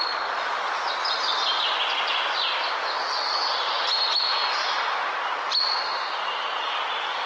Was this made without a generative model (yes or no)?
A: yes